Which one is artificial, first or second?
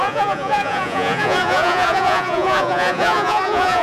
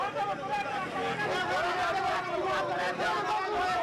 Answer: first